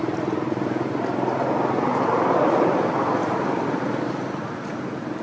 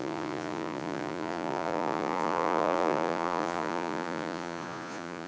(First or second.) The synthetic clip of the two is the second